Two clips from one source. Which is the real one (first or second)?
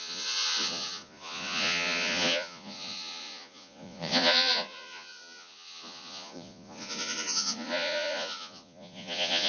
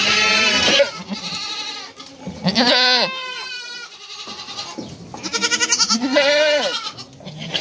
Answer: second